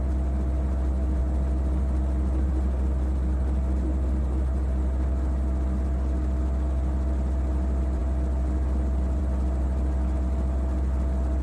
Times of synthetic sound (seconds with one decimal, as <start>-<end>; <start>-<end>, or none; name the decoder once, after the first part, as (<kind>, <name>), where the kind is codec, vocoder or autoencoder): none